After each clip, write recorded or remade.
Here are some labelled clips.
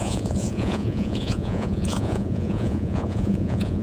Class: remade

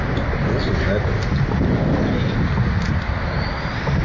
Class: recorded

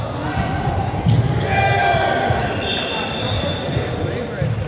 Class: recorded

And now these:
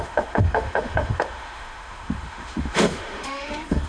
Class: remade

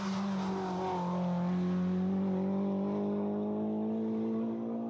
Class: recorded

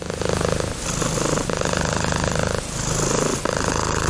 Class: recorded